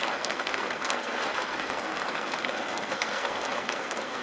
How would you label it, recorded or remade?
remade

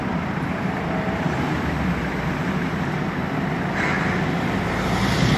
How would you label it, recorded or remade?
recorded